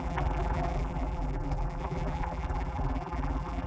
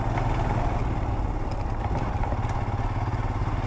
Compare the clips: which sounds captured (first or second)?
second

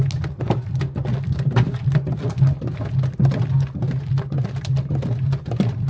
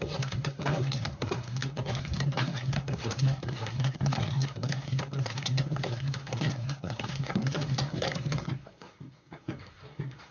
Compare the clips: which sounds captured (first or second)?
first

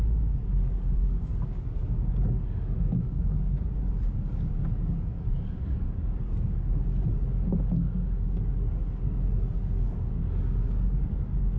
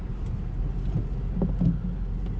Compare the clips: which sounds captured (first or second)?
second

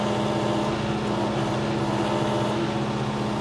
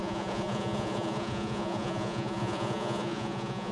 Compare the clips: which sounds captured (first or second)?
first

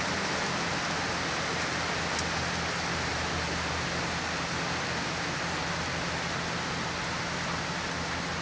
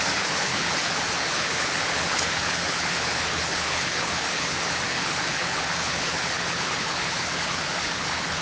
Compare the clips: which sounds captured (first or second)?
first